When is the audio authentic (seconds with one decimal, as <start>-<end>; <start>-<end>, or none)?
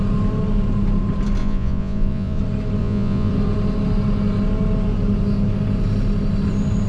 0.0-1.4; 2.4-2.8; 3.3-6.9